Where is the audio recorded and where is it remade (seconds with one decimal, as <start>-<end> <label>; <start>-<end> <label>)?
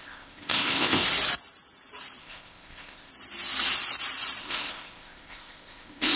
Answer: 0.0-1.0 remade; 1.0-2.2 recorded; 2.2-3.1 remade; 3.1-4.4 recorded; 4.4-6.2 remade